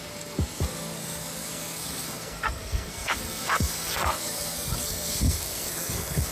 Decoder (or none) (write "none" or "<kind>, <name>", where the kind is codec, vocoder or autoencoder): codec, SNAC